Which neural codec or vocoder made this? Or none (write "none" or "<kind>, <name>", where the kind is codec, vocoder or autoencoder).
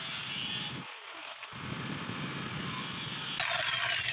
none